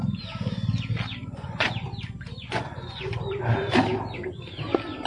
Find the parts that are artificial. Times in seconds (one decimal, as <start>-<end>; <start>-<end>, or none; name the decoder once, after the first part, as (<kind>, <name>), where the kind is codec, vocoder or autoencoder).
1.1-1.7 (vocoder, Vocos); 2.4-3.1